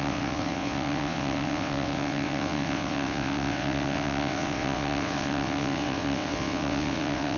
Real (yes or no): no